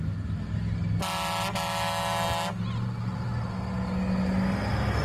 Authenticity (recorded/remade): recorded